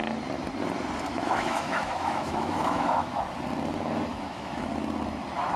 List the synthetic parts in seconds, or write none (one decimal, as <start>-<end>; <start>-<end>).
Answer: 1.1-3.2; 4.1-4.7